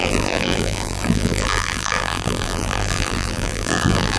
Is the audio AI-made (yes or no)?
yes